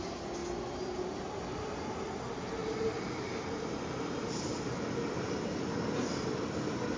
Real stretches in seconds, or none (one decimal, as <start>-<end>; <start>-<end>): 0.0-2.6; 4.6-7.0